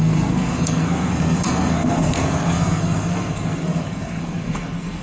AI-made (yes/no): yes